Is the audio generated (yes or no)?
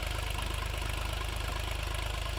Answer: no